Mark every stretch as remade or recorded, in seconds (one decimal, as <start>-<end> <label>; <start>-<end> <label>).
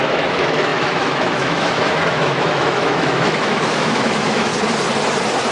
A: 0.0-4.5 remade; 4.5-5.5 recorded